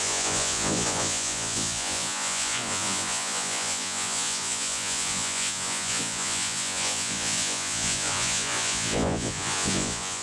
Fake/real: fake